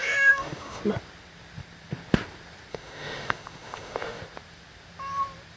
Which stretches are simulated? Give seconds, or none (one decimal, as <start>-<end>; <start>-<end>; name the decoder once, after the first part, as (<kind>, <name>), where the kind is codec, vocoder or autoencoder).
0.0-0.8 (autoencoder, DAC-VAE); 2.7-4.2